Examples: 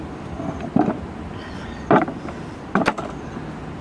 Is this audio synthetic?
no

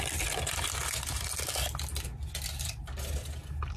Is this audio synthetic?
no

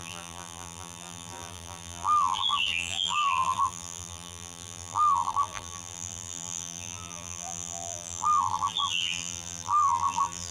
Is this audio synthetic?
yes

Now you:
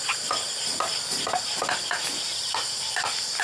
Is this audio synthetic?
yes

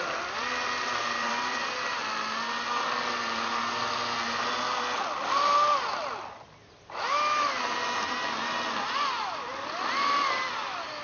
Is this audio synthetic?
no